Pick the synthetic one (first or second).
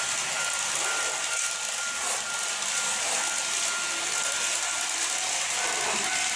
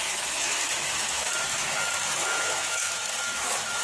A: second